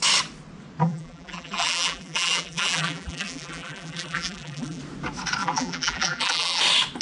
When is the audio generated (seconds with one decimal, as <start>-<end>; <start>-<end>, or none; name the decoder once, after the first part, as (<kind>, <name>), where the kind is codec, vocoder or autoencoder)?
0.8-4.8 (vocoder, BigVGAN v2); 5.4-6.6